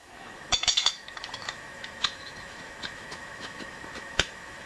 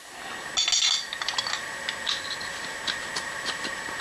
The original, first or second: second